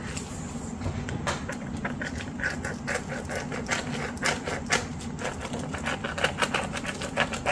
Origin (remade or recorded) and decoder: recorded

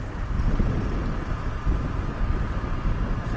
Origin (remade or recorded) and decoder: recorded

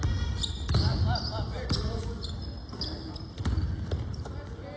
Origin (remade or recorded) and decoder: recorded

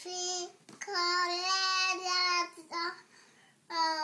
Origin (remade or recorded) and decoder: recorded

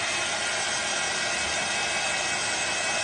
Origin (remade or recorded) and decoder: recorded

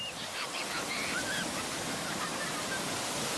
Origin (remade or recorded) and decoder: recorded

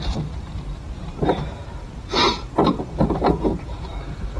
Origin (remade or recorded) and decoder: remade, vocoder, BigVGAN v2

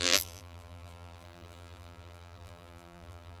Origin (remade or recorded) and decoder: remade, vocoder, BigVGAN v2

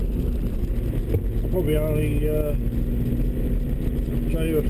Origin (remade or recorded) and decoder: recorded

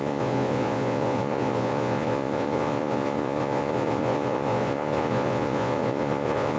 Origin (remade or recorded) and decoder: remade, vocoder, Vocos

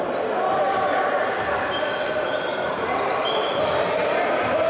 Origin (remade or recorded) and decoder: recorded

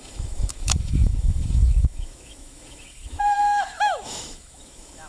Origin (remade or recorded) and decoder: remade, autoencoder, DAC-VAE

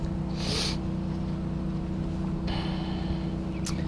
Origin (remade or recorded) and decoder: recorded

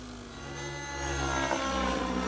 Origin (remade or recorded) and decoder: recorded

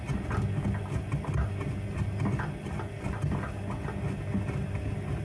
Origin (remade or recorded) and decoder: recorded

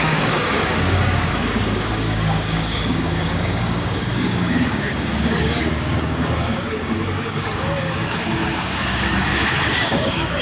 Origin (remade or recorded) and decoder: remade, codec, DAC